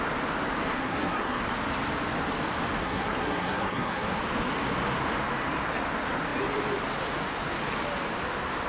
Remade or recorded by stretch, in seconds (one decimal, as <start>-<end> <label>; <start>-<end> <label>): 0.0-0.7 recorded; 0.7-1.4 remade; 1.4-2.8 recorded; 2.8-4.2 remade; 4.2-8.7 recorded